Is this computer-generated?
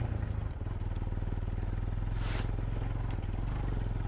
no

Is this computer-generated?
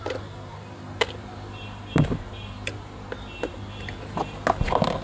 no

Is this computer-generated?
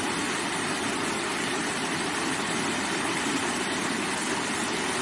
no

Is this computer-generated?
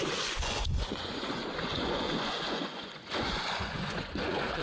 yes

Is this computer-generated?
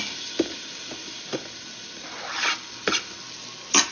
no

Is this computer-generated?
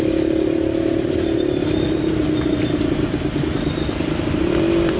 no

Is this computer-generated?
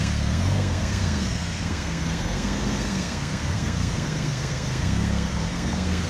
yes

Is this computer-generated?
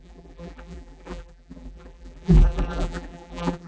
yes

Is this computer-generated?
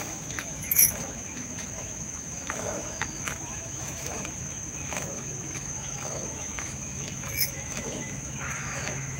yes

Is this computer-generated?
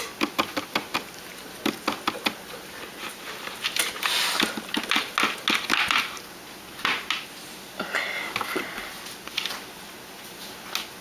no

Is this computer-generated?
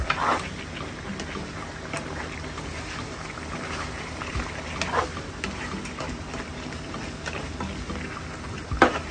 no